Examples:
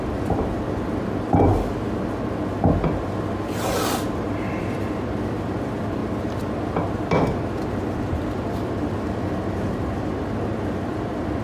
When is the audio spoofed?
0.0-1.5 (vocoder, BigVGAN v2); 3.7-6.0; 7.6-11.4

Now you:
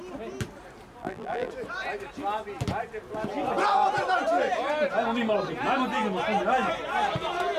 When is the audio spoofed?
1.0-1.5 (vocoder, BigVGAN v2)

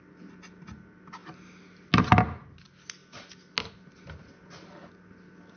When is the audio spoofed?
0.0-1.2 (vocoder, BigVGAN v2); 2.6-3.0; 3.7-5.6

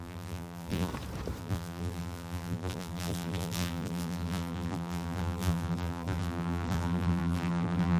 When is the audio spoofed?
0.0-0.9 (vocoder, BigVGAN v2); 1.4-8.0

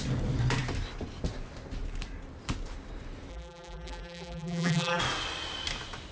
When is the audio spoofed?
3.3-5.0 (vocoder, BigVGAN v2)

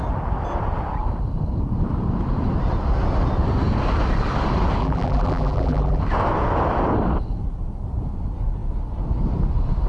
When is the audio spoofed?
4.8-6.0 (vocoder, BigVGAN v2)

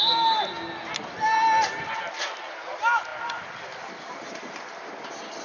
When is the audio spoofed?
3.1-4.3 (vocoder, BigVGAN v2)